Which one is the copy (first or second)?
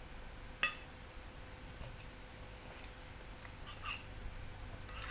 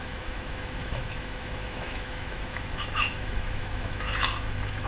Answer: second